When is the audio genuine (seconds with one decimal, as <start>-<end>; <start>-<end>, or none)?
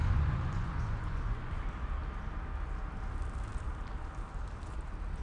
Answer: 1.5-5.2